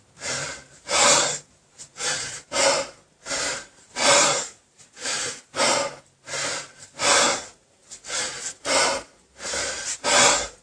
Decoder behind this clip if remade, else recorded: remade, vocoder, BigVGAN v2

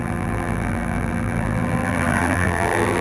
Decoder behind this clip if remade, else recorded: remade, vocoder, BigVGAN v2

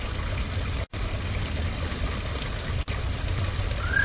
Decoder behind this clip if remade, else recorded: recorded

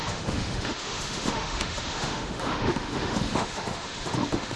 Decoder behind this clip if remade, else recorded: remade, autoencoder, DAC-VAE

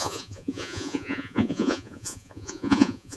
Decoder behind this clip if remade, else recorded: remade, vocoder, Vocos